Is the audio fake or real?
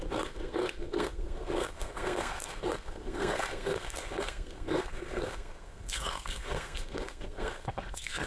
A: fake